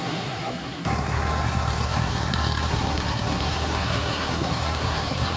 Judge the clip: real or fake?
fake